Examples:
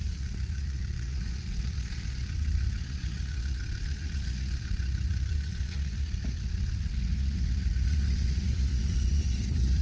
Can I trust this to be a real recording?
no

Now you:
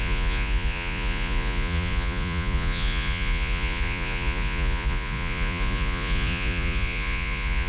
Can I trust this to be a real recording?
no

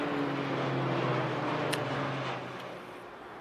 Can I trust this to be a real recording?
yes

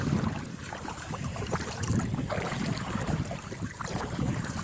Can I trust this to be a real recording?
no